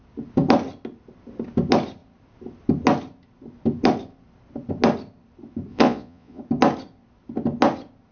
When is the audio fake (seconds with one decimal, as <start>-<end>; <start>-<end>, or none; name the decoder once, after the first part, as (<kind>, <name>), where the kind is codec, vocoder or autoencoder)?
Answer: 5.7-6.4 (vocoder, Vocos)